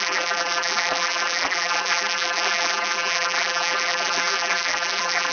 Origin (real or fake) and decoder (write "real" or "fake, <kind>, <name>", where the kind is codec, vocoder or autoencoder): fake, vocoder, BigVGAN v2